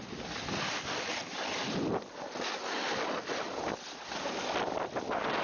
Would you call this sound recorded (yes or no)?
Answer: yes